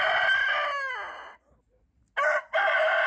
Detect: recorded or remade recorded